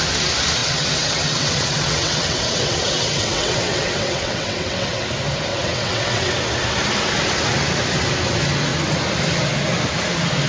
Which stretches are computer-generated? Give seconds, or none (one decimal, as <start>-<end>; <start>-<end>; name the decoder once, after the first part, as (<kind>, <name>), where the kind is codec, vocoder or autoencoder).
0.6-5.0 (vocoder, WaveNeXt); 5.5-6.3